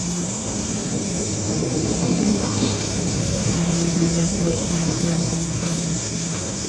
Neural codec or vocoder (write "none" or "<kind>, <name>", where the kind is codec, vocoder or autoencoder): codec, SNAC